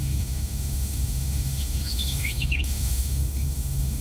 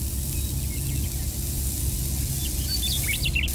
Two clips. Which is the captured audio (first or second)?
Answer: second